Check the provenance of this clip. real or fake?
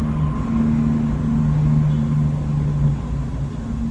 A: real